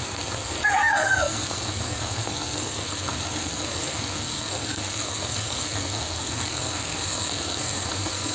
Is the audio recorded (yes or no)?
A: no